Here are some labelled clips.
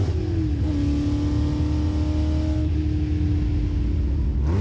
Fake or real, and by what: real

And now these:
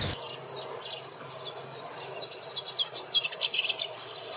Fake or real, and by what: real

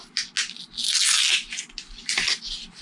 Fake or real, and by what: real